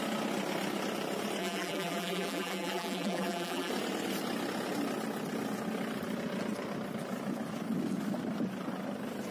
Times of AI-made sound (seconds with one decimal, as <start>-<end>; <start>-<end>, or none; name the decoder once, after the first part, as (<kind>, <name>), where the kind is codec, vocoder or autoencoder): 1.4-3.7 (vocoder, BigVGAN v2)